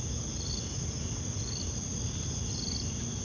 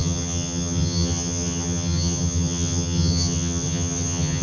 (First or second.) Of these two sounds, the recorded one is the first